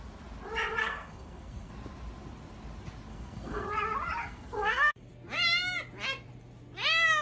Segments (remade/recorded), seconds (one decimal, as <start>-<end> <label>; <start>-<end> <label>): 0.0-0.8 recorded; 0.8-1.7 remade; 1.7-3.1 recorded; 3.1-3.7 remade; 3.7-4.2 recorded; 4.2-5.1 remade; 5.1-7.2 recorded